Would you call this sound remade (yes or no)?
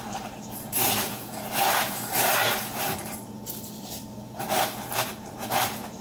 yes